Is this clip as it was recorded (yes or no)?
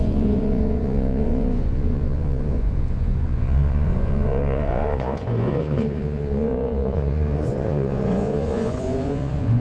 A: no